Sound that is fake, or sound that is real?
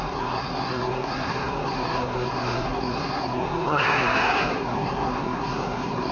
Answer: fake